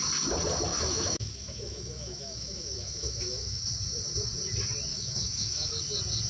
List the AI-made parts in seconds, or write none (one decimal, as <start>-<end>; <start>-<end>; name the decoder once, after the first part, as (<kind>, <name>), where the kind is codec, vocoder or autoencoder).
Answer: 0.7-3.6 (autoencoder, DAC-VAE); 4.9-5.7